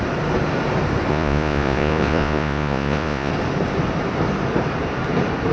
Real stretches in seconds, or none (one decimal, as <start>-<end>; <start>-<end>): 0.0-1.1; 3.3-5.5